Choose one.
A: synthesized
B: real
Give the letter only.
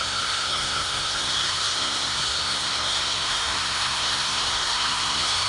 A